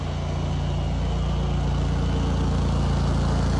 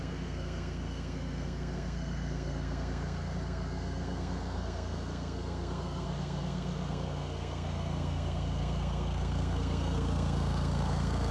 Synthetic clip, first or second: second